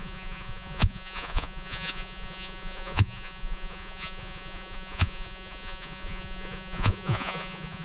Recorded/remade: remade